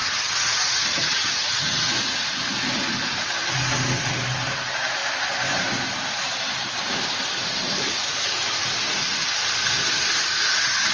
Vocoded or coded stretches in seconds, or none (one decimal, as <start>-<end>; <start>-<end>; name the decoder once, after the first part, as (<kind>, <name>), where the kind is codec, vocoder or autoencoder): 0.0-1.9 (vocoder, HiFi-GAN)